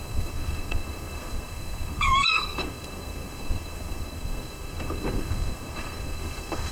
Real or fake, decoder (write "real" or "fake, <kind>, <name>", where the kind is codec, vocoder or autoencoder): fake, codec, SNAC